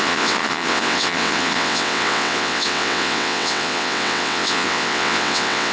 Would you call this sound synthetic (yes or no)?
yes